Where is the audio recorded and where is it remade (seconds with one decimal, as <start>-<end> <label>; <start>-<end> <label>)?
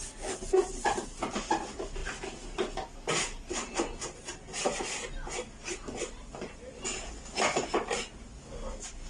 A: 0.0-9.1 recorded